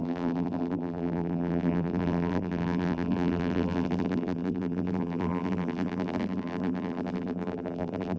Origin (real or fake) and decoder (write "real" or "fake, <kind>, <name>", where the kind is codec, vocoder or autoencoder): fake, vocoder, BigVGAN v2